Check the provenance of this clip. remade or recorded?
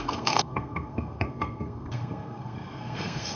remade